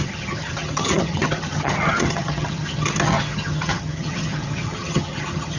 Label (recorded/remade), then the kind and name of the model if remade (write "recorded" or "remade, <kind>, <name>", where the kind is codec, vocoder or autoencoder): remade, vocoder, HiFi-GAN